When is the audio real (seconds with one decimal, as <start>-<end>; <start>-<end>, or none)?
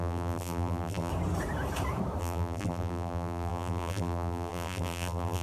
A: 1.1-2.2